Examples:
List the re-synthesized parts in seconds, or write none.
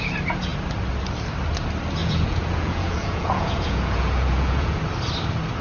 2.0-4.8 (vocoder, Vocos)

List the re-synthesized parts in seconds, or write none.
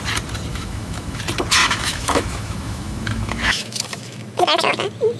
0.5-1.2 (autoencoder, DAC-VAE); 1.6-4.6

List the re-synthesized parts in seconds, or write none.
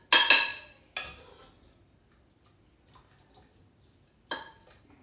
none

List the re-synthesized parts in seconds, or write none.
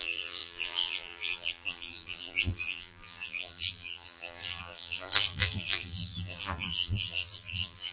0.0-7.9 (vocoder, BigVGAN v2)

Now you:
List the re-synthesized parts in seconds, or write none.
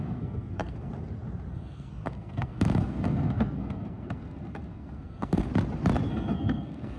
0.0-0.9 (codec, SNAC); 1.5-5.5; 6.1-7.0